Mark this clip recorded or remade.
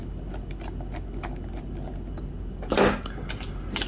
recorded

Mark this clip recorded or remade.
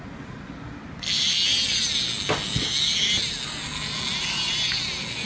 recorded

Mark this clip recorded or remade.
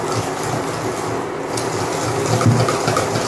recorded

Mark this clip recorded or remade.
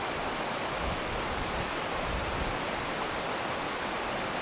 recorded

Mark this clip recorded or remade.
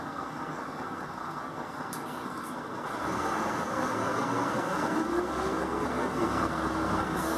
remade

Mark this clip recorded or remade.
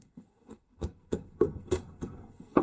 remade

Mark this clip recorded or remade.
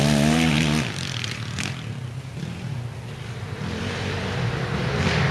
recorded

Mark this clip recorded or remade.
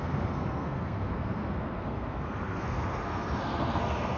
remade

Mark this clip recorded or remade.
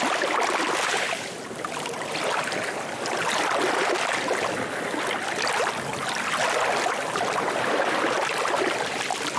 recorded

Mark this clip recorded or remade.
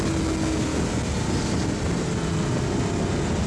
recorded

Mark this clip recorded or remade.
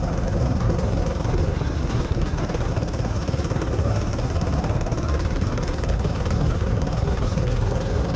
remade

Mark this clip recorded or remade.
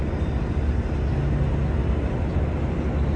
recorded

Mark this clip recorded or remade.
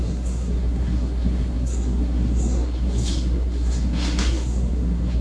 remade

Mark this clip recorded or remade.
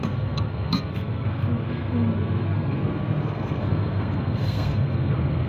remade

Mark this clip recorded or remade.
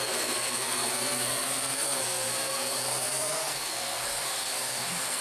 remade